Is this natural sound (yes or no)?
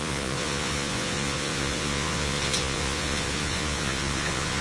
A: no